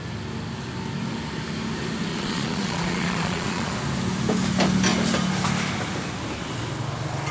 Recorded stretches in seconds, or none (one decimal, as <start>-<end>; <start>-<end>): 0.0-2.1; 3.7-7.3